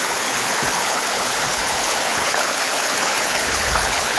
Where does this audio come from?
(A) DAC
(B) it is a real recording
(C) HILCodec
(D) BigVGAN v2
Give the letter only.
C